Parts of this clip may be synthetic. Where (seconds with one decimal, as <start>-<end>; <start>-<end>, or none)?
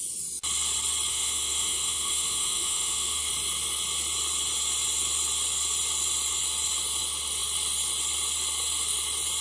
1.1-3.3